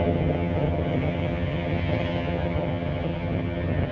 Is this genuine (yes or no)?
no